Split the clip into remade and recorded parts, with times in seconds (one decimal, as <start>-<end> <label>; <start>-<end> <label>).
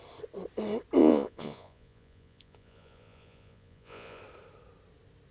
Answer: 0.0-1.0 recorded; 1.0-4.2 remade; 4.2-5.3 recorded